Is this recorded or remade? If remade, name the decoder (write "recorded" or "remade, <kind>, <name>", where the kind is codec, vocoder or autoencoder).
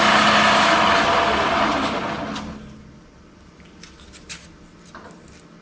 recorded